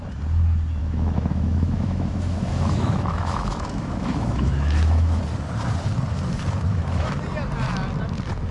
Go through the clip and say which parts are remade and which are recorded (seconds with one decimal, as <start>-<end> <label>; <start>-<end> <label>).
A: 0.0-0.8 recorded; 0.8-5.2 remade; 5.2-6.7 recorded; 6.7-7.2 remade; 7.2-8.5 recorded